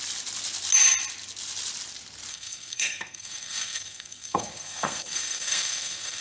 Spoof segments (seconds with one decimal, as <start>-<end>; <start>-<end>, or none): 2.3-6.2